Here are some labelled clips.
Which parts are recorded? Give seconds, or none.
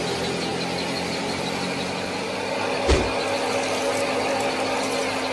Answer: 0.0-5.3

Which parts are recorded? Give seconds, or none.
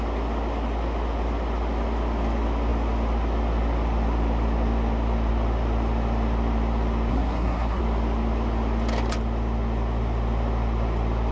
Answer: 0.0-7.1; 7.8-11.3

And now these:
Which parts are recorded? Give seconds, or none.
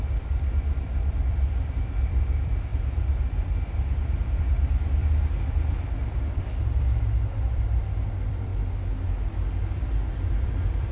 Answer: 8.5-9.7